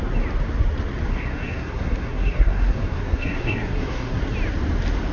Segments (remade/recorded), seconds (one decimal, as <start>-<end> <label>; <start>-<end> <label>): 0.0-1.1 recorded; 1.1-4.2 remade; 4.2-5.1 recorded